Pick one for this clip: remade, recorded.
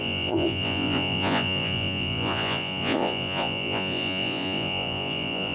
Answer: remade